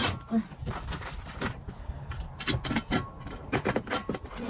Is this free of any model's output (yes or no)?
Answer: yes